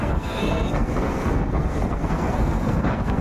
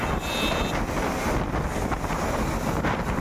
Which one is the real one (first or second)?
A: second